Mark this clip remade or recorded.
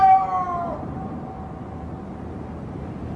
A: recorded